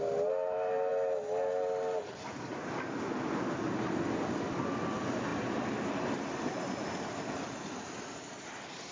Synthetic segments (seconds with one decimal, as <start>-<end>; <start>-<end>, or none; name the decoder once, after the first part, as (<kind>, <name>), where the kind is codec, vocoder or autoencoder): none